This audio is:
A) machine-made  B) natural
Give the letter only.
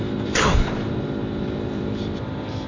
B